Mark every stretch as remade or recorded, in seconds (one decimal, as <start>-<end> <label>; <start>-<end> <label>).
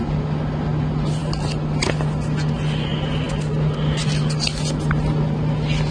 0.0-5.9 recorded